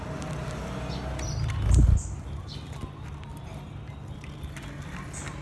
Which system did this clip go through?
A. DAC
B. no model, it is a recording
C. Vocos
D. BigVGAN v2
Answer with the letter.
B